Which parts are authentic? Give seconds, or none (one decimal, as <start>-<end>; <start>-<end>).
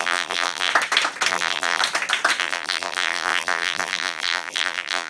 0.7-1.3; 1.8-2.4